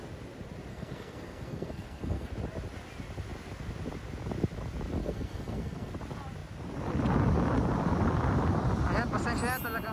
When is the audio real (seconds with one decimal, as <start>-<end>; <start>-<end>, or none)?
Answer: 0.0-0.7; 2.3-5.0; 5.9-9.9